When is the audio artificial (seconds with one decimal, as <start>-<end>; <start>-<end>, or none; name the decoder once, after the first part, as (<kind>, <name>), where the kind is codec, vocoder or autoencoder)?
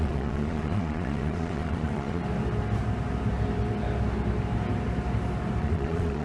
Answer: 0.0-2.2 (vocoder, Vocos); 5.6-6.2